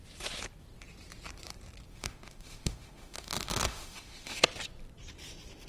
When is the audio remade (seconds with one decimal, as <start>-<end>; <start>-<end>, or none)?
1.9-4.4